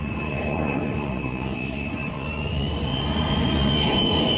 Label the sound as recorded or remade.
remade